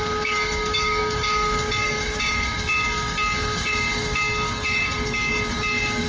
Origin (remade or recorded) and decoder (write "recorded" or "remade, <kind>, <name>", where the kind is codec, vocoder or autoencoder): remade, codec, DAC